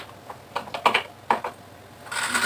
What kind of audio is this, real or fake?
real